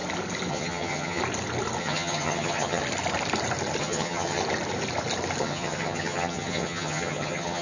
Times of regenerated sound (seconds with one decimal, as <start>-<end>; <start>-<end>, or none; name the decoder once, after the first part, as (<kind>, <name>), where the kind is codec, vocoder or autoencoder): 0.5-1.2 (vocoder, HiFi-GAN); 1.8-2.8; 3.8-4.4; 5.4-7.6